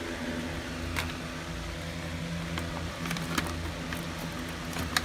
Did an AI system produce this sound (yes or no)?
no